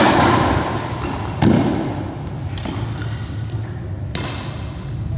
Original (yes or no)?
yes